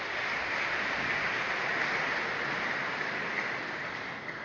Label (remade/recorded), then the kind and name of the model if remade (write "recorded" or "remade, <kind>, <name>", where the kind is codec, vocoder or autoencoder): recorded